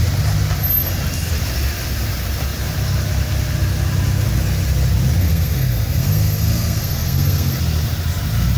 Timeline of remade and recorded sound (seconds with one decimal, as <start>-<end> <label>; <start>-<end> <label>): 0.0-5.2 recorded; 5.2-7.6 remade; 7.6-8.6 recorded